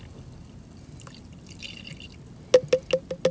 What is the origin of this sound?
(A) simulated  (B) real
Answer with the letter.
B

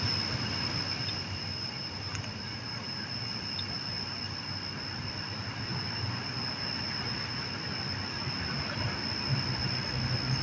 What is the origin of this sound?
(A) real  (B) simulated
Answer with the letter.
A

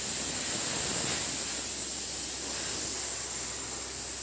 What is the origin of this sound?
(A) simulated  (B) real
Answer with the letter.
B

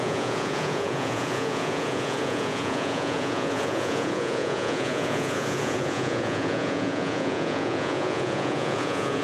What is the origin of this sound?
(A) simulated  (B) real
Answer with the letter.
A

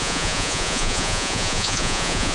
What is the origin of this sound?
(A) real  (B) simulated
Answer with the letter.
B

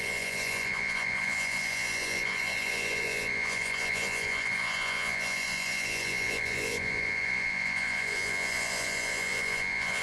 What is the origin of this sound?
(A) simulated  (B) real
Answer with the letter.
A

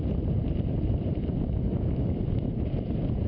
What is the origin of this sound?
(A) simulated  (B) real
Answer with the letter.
B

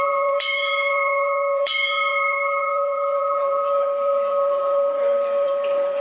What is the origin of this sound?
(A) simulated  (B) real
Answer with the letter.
A